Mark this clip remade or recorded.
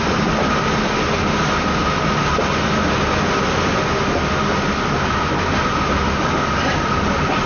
recorded